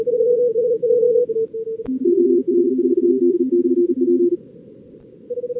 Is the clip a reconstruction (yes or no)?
no